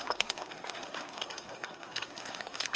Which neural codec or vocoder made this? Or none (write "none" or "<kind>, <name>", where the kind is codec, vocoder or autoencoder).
codec, SNAC